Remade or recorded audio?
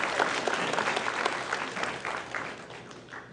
recorded